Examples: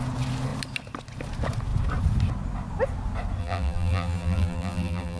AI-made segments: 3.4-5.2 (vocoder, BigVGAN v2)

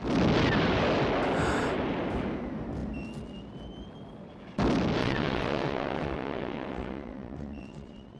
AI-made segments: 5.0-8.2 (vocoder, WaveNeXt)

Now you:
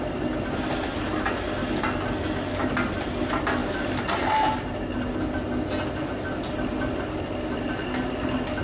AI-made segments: 3.6-4.5 (vocoder, BigVGAN v2)

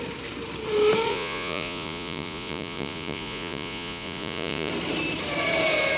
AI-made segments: 1.1-4.7 (vocoder, Vocos)

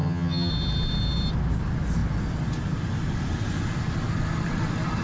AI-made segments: 0.0-0.5 (vocoder, HiFi-GAN)